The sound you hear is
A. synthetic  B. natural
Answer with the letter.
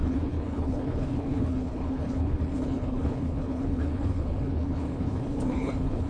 A